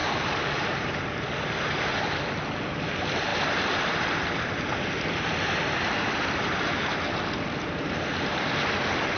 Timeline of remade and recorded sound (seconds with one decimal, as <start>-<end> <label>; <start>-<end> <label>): 0.0-1.9 remade; 1.9-9.2 recorded